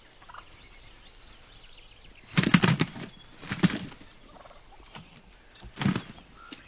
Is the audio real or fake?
real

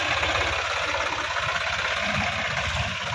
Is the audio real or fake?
real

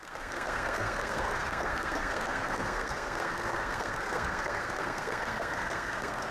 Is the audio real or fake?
fake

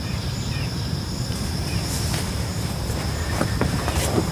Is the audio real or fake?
fake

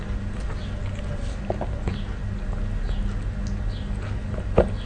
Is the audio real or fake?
real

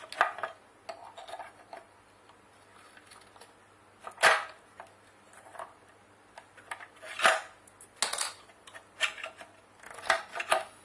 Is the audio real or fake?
real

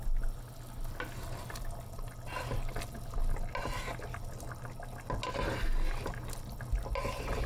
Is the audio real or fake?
real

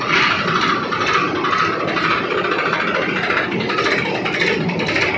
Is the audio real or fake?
real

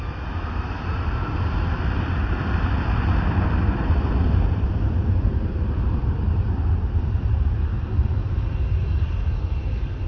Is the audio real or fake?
real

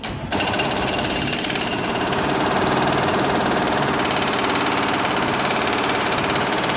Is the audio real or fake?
fake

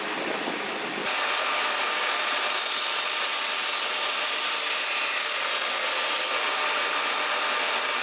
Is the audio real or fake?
real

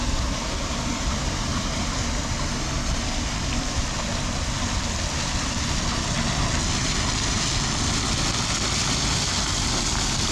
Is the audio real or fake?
real